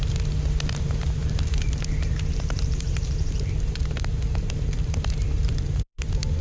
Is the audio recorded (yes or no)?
no